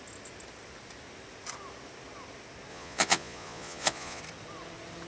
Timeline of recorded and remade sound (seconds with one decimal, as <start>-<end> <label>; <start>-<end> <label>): 0.0-2.7 recorded; 2.7-4.2 remade; 4.2-5.1 recorded